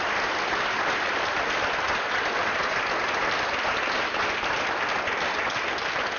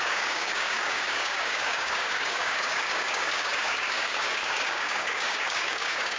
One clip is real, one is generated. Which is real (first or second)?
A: first